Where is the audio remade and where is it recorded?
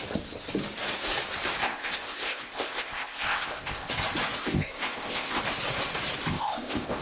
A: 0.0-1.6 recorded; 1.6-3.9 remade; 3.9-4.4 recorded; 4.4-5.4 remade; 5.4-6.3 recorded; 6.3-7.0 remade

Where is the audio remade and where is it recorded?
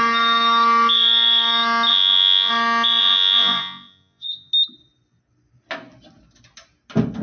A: 0.0-1.9 recorded; 1.9-2.5 remade; 2.5-3.0 recorded; 3.0-4.5 remade; 4.5-7.2 recorded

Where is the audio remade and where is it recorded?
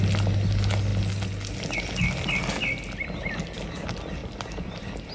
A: 0.0-4.2 recorded; 4.2-5.1 remade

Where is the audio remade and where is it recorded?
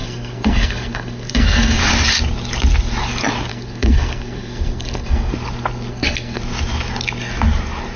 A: 0.0-1.8 remade; 1.8-3.5 recorded; 3.5-5.3 remade; 5.3-5.9 recorded; 5.9-6.4 remade; 6.4-8.0 recorded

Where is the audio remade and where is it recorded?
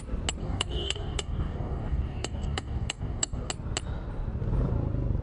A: 0.0-0.4 recorded; 0.4-3.5 remade; 3.5-5.2 recorded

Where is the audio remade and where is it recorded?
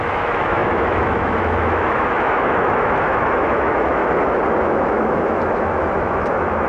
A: 0.0-4.0 remade; 4.0-4.5 recorded; 4.5-6.7 remade